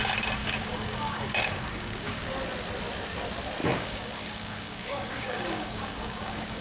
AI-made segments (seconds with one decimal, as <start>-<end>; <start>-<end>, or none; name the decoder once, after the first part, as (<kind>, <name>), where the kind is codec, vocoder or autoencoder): 0.4-2.3 (codec, DAC); 3.6-6.6